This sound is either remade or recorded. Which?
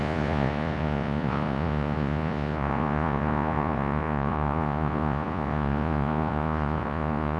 remade